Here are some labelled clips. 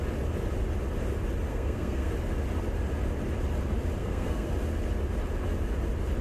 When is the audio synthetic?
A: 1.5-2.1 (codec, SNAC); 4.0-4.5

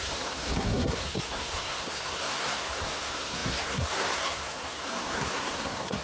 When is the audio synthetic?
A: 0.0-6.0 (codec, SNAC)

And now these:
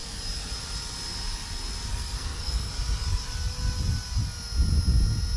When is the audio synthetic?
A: 1.9-2.7 (codec, SNAC)